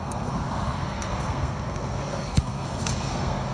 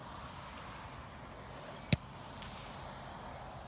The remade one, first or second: first